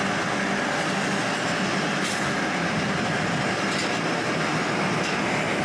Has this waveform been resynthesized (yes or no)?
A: no